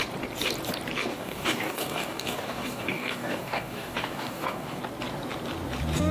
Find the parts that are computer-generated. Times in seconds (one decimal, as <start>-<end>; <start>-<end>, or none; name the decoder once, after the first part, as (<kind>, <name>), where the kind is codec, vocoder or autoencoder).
1.1-4.8 (codec, DAC)